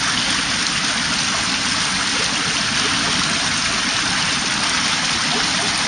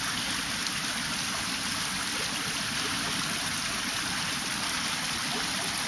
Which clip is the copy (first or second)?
second